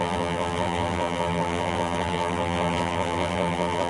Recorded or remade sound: remade